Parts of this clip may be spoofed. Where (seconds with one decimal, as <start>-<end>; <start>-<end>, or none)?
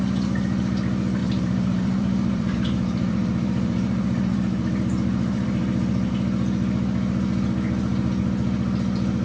1.2-6.1